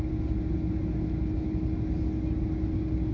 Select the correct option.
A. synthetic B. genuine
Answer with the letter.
B